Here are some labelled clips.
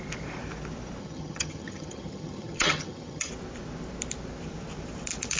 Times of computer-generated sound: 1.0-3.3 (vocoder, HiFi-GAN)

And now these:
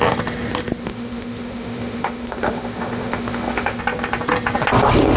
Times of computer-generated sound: 0.8-3.8 (autoencoder, DAC-VAE)

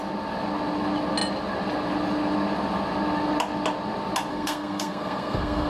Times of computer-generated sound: 4.3-5.7 (codec, SNAC)

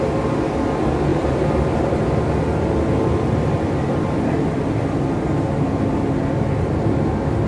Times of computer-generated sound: none